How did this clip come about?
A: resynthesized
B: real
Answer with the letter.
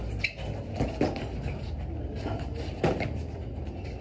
B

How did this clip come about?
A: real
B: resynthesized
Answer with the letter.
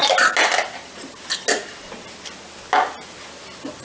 A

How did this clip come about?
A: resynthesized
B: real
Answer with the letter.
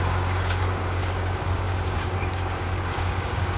A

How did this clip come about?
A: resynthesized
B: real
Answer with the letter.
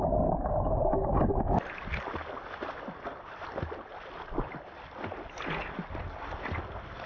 B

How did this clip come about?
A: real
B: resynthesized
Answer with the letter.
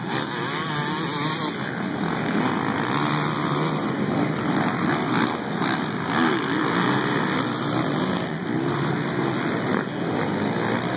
A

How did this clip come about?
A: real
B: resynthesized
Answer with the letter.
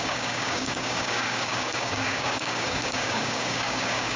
B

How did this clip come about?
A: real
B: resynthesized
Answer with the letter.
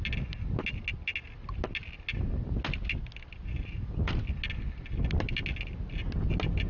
A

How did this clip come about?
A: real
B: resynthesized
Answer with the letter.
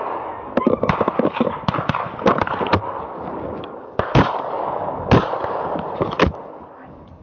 B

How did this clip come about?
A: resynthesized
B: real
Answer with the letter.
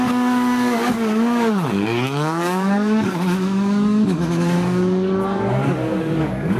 A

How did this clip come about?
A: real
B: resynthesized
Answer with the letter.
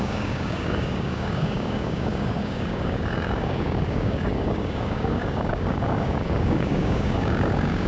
B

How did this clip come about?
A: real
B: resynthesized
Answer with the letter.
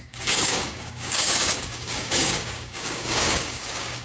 B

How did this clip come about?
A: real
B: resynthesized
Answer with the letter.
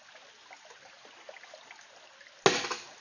A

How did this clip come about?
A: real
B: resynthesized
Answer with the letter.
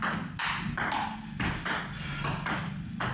A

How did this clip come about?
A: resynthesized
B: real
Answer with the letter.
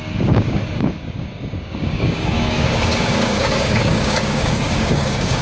A